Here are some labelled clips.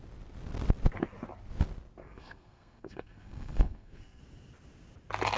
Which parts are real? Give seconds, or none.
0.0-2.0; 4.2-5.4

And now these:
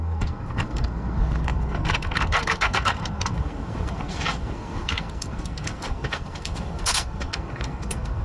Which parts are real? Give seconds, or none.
none

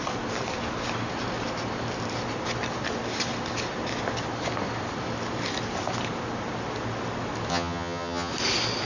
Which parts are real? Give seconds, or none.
0.0-7.5; 8.3-8.8

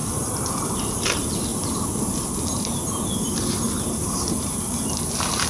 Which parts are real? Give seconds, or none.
0.0-5.5

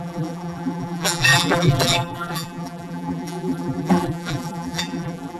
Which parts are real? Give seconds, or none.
none

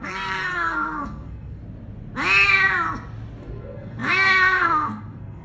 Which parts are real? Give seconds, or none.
1.6-3.6